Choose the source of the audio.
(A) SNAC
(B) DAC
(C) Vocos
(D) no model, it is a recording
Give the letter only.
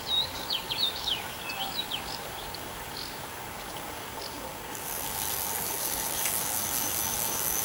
B